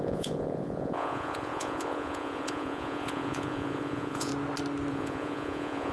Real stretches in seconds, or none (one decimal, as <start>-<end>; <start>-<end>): 4.3-4.9